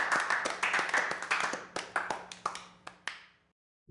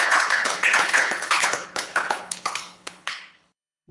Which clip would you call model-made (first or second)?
second